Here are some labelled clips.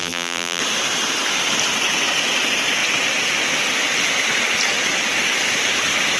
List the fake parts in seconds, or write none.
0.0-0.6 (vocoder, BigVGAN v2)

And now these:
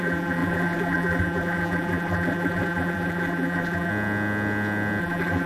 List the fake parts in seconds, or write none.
0.0-3.9 (vocoder, BigVGAN v2); 5.0-5.5

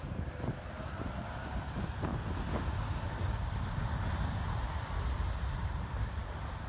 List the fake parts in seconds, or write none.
none

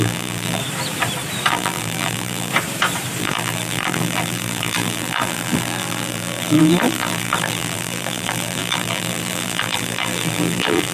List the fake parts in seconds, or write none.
0.0-0.6 (vocoder, BigVGAN v2); 1.5-2.5; 3.2-10.9

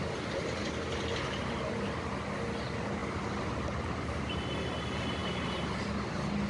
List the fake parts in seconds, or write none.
5.2-5.8 (vocoder, BigVGAN v2)

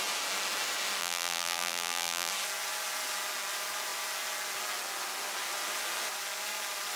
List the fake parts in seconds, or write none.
1.0-2.3 (vocoder, BigVGAN v2)

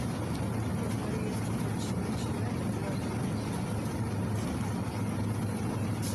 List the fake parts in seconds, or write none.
none